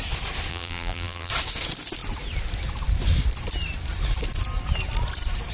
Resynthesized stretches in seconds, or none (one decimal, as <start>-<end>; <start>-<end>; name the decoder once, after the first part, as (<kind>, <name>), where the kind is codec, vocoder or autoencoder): 0.5-1.3 (vocoder, BigVGAN v2)